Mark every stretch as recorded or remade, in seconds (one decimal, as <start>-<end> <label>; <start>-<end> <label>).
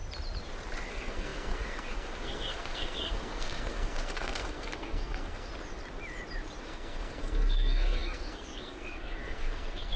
0.0-0.9 recorded; 0.9-5.5 remade; 5.5-6.6 recorded; 6.6-10.0 remade